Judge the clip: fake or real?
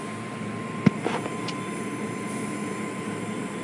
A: real